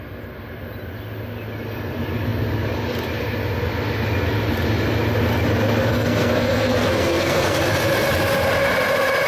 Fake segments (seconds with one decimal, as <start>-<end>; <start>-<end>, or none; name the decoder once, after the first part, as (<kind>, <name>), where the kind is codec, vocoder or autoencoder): 5.9-7.6 (codec, SNAC)